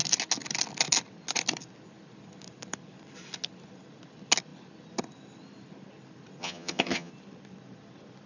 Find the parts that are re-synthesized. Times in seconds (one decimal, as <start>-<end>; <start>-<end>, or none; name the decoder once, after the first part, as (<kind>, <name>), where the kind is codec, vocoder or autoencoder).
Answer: 6.4-7.1 (vocoder, HiFi-GAN)